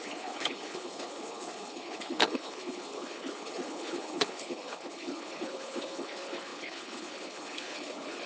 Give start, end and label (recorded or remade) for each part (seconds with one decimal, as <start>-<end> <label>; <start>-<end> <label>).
0.0-8.3 remade